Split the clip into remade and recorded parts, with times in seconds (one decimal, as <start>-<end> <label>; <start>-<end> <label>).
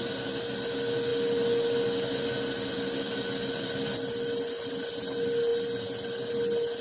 0.0-6.8 recorded